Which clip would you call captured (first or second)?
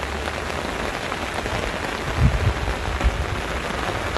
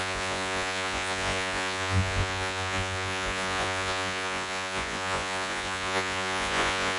first